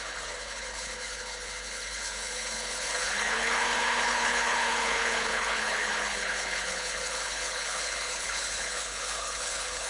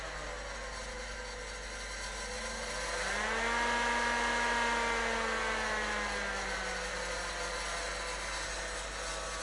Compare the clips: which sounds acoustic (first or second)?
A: second